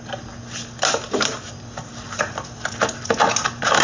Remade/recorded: recorded